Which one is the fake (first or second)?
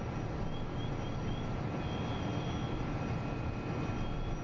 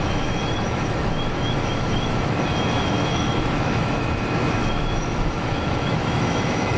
second